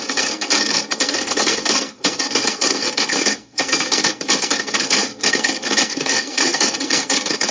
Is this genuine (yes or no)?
no